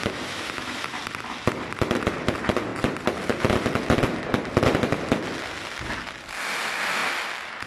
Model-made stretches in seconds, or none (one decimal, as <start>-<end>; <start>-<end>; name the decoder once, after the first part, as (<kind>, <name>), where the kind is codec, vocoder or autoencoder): 0.0-0.8 (autoencoder, DAC-VAE)